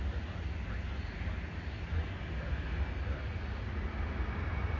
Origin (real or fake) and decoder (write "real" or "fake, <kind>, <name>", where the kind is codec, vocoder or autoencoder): real